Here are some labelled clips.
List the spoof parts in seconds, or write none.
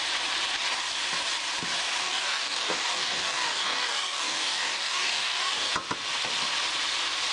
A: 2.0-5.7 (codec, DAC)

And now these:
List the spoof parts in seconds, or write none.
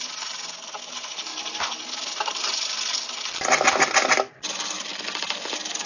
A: 0.0-1.3 (vocoder, BigVGAN v2); 3.5-4.9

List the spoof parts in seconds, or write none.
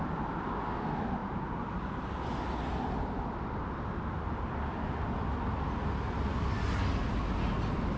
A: 1.2-2.2 (vocoder, BigVGAN v2)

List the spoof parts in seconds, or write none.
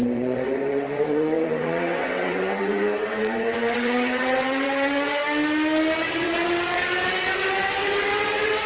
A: 0.0-5.2 (vocoder, WaveNeXt); 6.0-8.7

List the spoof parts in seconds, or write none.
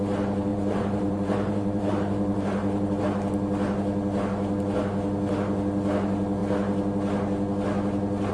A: 0.5-3.0 (vocoder, BigVGAN v2)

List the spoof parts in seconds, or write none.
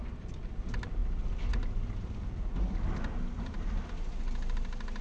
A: none